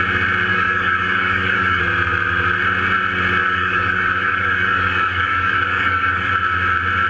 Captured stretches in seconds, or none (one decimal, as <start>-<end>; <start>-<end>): 0.0-0.5; 1.8-3.4; 6.3-7.1